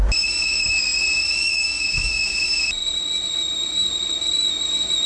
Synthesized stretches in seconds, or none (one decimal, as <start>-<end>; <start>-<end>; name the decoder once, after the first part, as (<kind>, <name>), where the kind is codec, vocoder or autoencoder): none